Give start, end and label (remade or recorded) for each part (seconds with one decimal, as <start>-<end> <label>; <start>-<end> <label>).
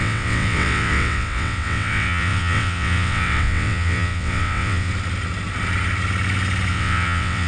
0.0-4.9 remade; 4.9-6.7 recorded; 6.7-7.5 remade